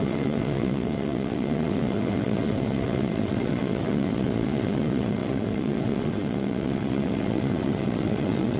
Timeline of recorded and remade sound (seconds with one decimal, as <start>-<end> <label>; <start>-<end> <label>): 0.0-8.6 remade